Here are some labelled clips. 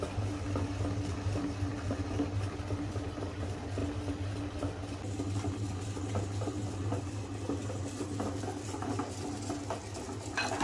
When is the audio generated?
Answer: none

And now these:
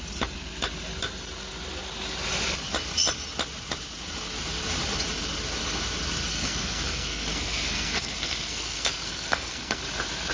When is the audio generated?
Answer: 6.3-9.8 (codec, SNAC)